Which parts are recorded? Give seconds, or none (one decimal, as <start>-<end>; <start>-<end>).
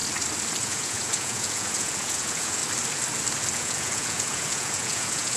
0.0-0.6; 2.6-3.5